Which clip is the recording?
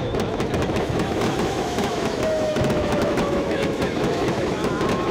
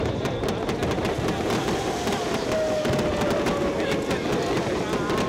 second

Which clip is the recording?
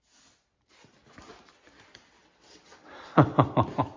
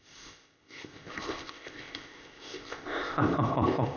first